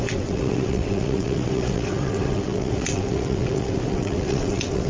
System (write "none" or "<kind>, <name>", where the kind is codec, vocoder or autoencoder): vocoder, WaveNeXt